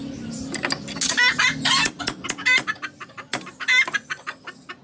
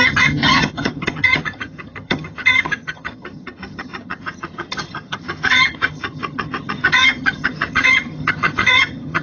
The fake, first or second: second